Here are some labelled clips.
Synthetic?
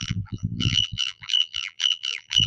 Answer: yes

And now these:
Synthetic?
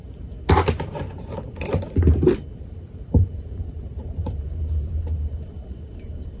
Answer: yes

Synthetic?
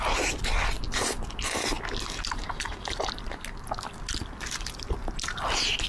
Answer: no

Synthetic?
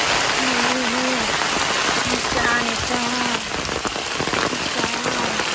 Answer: no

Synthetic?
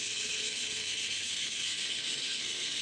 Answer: yes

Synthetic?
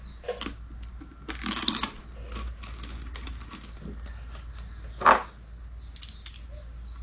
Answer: no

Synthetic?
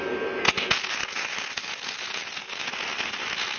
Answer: no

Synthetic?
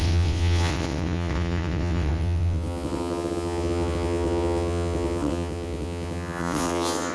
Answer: yes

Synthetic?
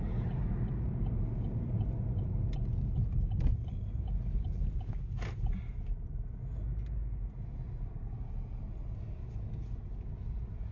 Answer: no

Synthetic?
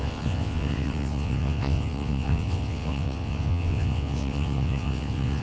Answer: yes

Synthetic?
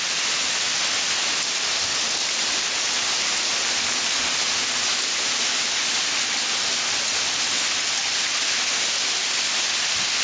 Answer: no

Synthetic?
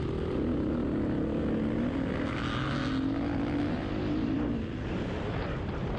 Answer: no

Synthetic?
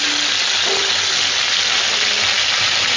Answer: no